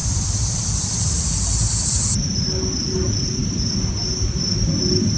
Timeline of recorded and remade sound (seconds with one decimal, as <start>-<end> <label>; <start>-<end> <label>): 0.0-1.9 remade; 1.9-5.2 recorded